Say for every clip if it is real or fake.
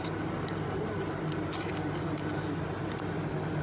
real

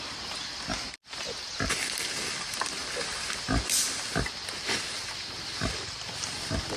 real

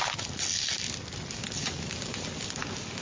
real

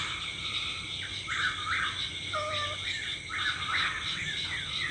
real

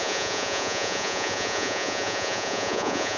fake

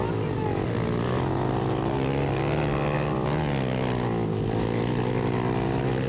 real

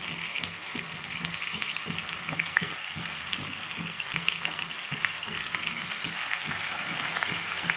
fake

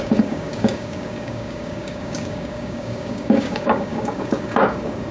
fake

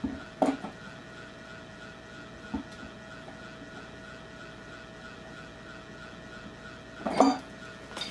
real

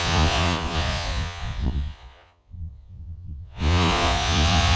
fake